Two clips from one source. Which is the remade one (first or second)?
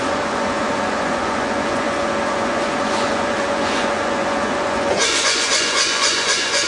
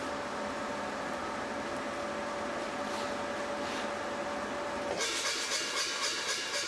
first